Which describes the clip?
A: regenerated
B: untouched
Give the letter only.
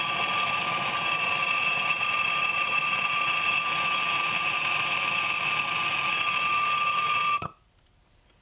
B